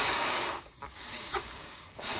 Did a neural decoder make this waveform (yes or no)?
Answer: yes